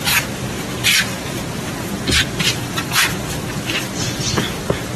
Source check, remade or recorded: recorded